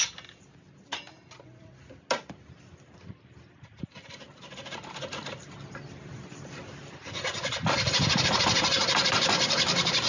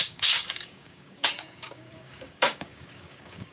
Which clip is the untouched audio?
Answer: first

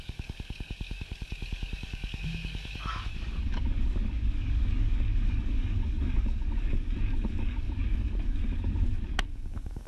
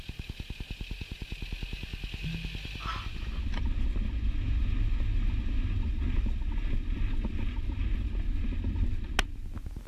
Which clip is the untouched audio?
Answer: second